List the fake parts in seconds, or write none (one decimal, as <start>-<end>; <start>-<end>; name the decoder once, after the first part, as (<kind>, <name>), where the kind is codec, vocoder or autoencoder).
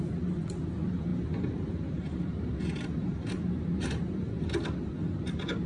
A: 1.1-4.5 (vocoder, BigVGAN v2)